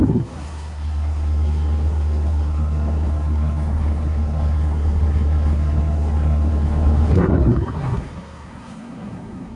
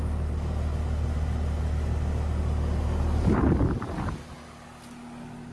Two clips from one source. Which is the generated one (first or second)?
first